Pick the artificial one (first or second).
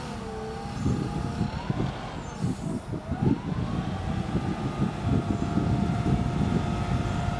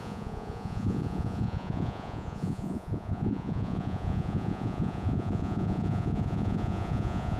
second